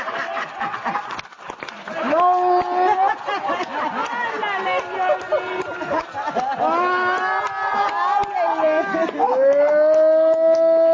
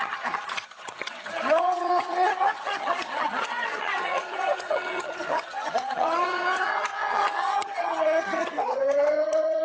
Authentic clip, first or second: first